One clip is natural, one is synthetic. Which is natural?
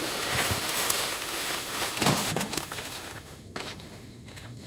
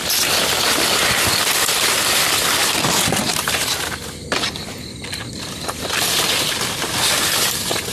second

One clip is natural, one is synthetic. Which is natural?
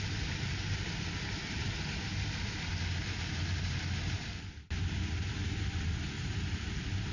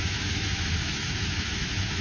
first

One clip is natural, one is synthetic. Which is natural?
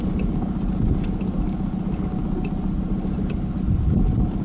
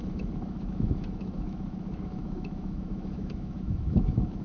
first